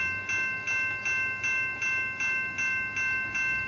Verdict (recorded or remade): recorded